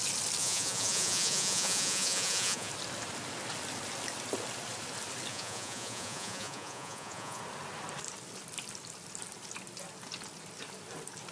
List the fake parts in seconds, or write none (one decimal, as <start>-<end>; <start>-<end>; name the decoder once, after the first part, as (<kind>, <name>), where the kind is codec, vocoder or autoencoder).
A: 0.4-2.7 (vocoder, Vocos); 5.3-7.4